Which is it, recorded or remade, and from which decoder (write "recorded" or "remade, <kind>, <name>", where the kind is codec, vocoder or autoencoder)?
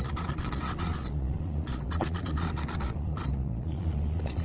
remade, vocoder, Vocos